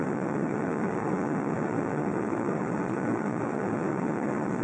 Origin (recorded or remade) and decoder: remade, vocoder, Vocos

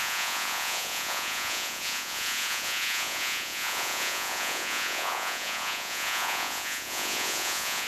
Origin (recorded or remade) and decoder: remade, vocoder, Vocos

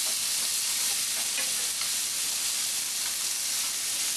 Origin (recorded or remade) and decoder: recorded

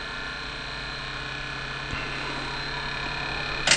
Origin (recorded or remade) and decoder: recorded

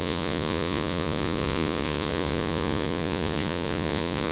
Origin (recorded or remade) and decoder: remade, vocoder, Vocos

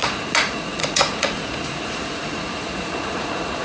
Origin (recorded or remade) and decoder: remade, vocoder, Vocos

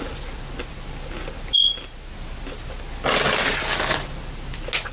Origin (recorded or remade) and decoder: recorded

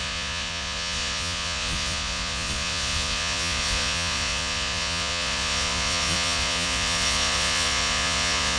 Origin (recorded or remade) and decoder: remade, vocoder, Vocos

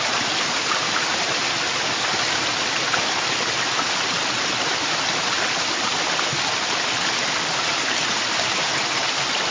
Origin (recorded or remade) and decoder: recorded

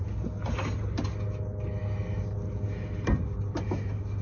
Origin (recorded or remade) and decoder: recorded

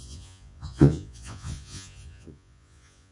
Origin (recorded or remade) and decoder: remade, vocoder, Vocos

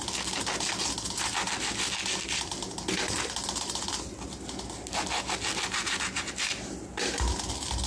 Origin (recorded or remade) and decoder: recorded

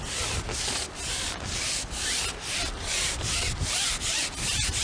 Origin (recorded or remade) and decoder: recorded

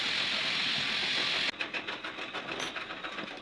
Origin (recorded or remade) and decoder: recorded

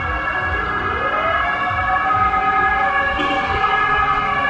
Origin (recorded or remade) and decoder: recorded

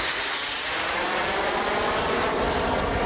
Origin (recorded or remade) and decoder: recorded